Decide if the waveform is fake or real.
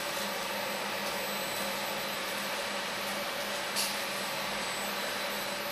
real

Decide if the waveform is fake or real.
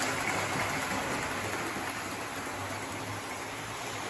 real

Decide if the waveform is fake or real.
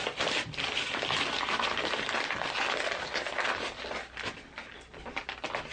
real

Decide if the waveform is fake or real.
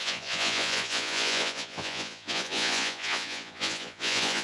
fake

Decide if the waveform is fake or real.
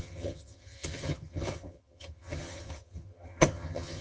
fake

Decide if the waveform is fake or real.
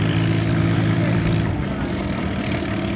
fake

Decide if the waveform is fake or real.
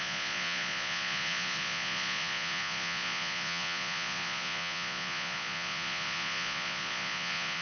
fake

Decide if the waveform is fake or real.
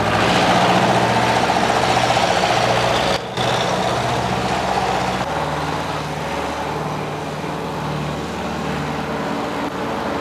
real